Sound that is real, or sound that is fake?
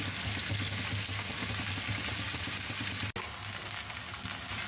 real